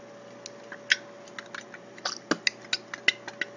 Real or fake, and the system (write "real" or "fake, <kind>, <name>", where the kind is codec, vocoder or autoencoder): real